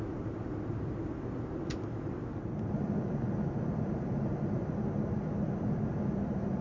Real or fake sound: real